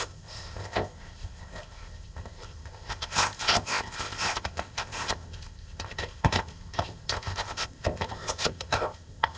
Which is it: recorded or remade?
remade